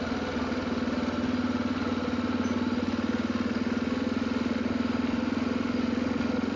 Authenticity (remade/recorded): recorded